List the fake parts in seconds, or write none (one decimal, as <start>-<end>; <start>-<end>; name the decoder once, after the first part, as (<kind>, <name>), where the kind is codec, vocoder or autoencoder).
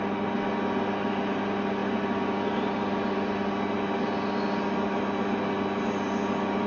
none